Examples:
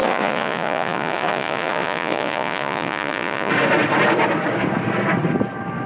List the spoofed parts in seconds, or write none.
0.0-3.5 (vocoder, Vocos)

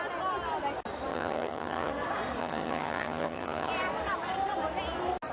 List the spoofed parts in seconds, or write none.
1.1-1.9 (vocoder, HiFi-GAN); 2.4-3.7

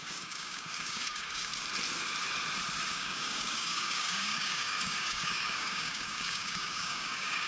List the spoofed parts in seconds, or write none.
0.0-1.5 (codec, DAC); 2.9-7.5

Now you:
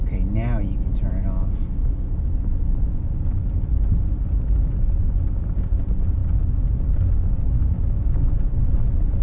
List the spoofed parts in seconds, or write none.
none

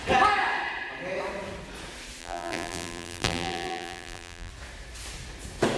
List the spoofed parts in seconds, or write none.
2.2-4.5 (vocoder, BigVGAN v2)

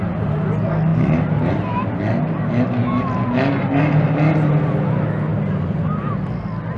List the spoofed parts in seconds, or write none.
none

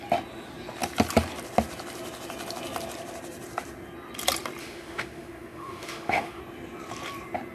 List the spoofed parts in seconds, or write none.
4.6-6.4 (autoencoder, DAC-VAE)

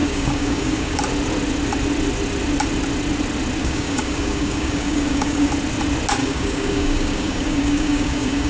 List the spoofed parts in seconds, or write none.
0.0-1.0 (codec, DAC); 3.6-5.5; 6.2-8.5